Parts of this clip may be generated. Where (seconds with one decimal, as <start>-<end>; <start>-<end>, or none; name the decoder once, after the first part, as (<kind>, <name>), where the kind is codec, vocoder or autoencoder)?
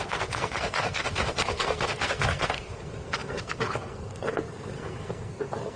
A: 0.0-5.8 (codec, SNAC)